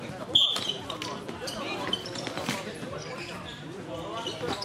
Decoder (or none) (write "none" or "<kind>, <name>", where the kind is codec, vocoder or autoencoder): vocoder, BigVGAN v2